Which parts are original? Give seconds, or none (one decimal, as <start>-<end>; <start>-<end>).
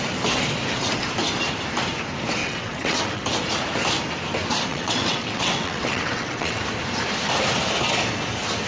0.0-2.4; 3.2-4.7; 6.6-8.7